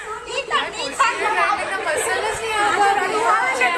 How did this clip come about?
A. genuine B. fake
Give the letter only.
A